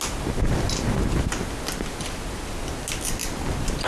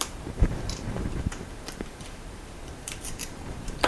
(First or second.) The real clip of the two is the first